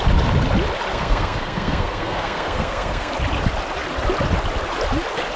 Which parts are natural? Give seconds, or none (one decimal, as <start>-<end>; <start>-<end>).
0.0-0.9; 3.1-5.4